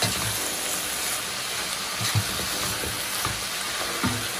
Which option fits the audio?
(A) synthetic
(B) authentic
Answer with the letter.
B